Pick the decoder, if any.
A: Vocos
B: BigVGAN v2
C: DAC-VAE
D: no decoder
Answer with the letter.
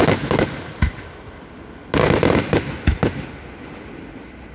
D